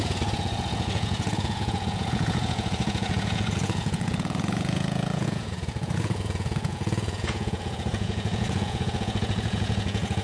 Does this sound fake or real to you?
fake